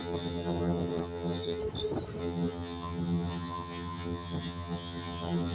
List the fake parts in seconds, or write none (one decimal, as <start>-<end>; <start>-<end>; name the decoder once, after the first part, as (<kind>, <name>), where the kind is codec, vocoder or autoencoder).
0.0-1.6 (vocoder, HiFi-GAN); 2.2-5.5